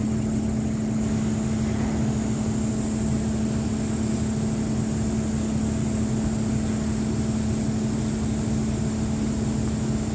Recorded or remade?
recorded